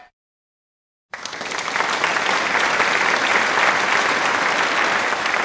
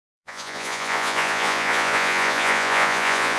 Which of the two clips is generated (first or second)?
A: second